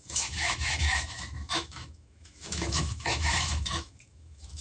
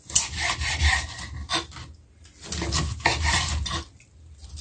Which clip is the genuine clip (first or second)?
second